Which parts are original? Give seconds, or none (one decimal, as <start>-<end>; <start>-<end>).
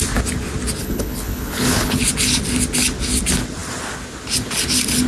0.0-0.8; 2.0-5.1